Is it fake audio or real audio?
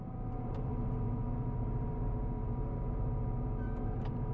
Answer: fake